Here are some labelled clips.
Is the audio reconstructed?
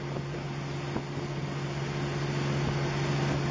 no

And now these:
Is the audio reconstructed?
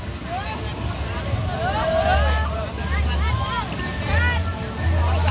no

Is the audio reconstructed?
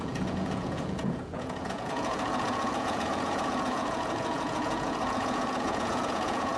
yes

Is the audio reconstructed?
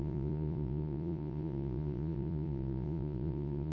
yes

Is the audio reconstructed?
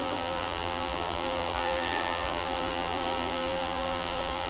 yes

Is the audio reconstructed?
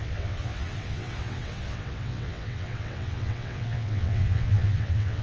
yes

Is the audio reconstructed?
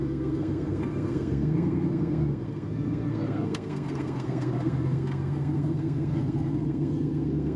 yes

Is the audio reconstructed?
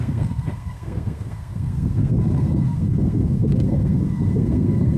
yes